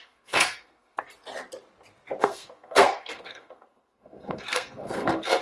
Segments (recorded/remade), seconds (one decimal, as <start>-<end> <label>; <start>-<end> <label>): 0.0-1.0 remade; 1.0-2.2 recorded; 2.2-5.4 remade